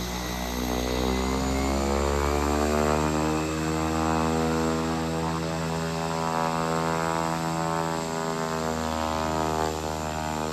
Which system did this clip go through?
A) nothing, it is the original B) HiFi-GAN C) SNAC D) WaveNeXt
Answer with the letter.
A